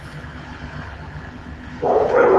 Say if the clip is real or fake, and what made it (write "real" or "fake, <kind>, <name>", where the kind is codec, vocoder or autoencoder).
fake, codec, HILCodec